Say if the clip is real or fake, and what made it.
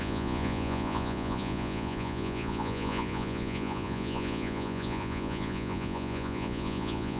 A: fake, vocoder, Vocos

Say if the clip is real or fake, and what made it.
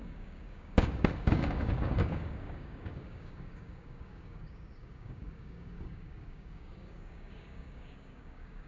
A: fake, codec, DAC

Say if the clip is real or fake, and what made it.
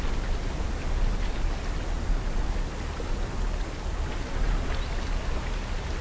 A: real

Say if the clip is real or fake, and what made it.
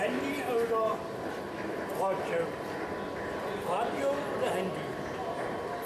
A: real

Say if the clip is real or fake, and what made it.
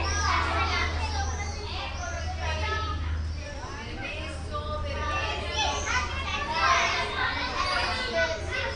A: real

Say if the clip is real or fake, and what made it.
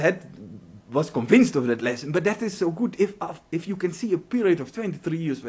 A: real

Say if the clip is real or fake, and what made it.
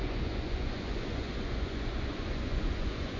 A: fake, vocoder, Vocos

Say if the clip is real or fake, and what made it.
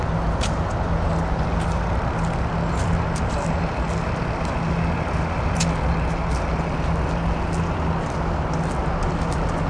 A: real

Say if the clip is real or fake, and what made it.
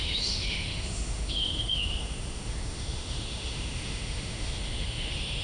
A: fake, autoencoder, DAC-VAE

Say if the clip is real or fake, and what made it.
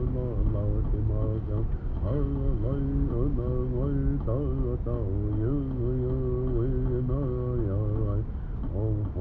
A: real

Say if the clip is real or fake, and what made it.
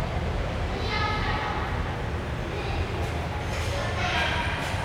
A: real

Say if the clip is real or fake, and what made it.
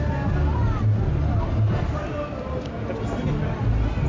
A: real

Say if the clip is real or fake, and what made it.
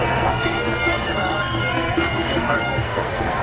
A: fake, codec, SNAC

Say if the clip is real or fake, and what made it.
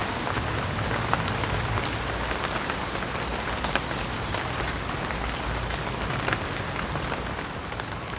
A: real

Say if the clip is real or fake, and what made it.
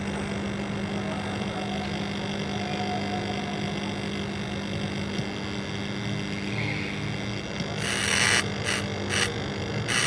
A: real